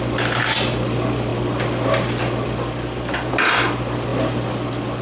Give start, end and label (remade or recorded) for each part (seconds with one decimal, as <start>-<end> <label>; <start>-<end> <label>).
0.0-5.0 recorded